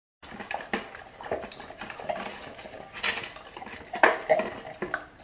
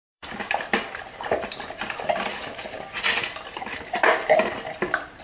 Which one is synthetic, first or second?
second